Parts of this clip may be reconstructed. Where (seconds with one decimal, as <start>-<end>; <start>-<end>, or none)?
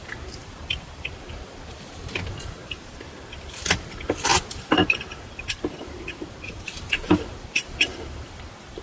0.0-8.8